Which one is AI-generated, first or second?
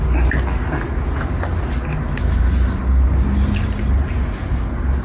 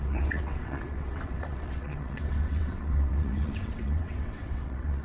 second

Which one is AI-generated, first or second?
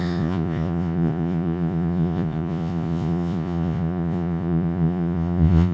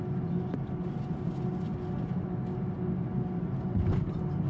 first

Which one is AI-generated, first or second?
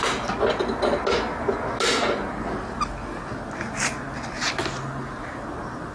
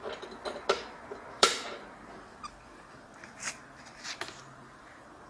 second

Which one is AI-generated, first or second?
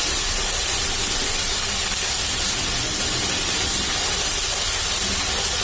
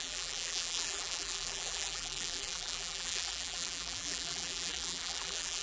second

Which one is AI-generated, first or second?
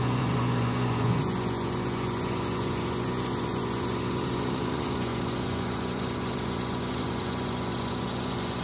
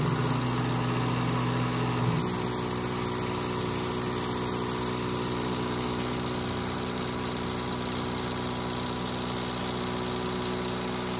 first